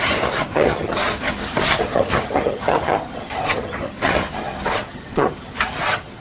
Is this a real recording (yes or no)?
no